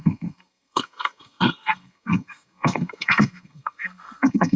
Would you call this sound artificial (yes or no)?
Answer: yes